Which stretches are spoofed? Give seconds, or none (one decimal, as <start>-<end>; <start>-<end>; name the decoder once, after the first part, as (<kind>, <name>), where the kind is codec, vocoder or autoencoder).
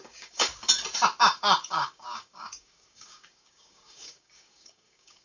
0.0-0.5 (codec, DAC); 1.2-5.2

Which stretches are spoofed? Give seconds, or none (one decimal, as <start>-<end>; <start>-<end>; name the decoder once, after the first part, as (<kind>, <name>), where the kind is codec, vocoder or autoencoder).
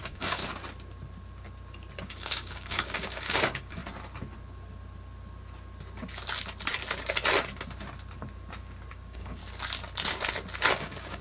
0.0-0.4 (codec, DAC); 2.0-3.8; 8.9-9.4; 10.7-11.2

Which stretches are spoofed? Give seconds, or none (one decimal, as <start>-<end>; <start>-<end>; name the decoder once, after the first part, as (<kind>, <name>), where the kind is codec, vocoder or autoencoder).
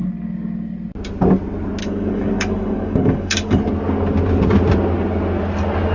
1.8-3.6 (codec, DAC)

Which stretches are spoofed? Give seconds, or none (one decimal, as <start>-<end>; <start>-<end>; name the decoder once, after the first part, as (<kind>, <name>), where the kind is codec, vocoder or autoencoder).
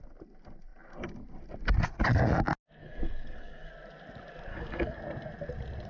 2.8-3.7 (codec, DAC); 4.5-5.0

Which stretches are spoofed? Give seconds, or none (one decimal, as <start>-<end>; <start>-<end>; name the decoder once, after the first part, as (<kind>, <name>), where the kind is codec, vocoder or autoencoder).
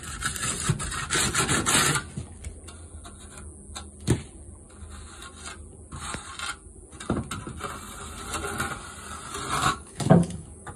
9.6-10.8 (codec, DAC)